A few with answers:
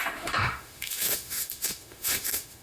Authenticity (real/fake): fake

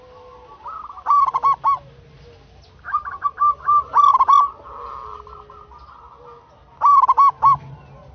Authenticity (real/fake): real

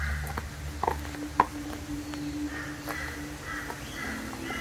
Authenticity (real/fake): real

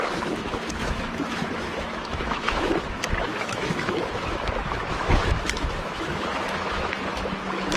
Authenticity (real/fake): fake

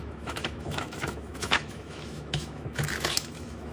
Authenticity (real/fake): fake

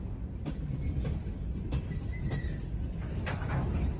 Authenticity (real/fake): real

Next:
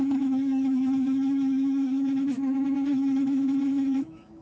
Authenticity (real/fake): fake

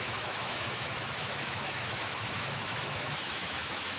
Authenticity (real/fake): fake